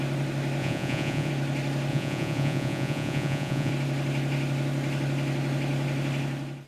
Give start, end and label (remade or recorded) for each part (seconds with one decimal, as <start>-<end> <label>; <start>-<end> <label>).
0.0-0.6 recorded; 0.6-1.3 remade; 1.3-1.9 recorded; 1.9-3.7 remade; 3.7-6.7 recorded